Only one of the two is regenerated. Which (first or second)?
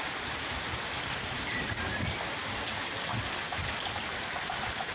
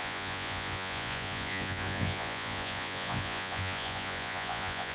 second